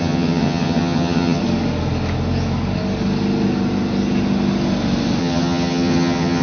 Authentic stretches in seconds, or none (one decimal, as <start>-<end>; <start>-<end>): 1.4-5.2